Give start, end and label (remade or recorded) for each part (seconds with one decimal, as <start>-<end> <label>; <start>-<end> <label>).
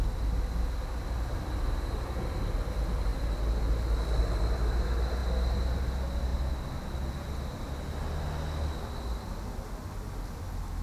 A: 0.0-10.8 recorded